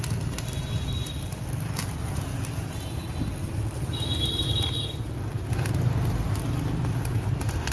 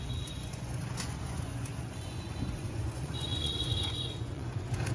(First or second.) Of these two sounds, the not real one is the second